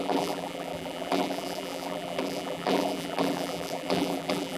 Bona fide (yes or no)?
no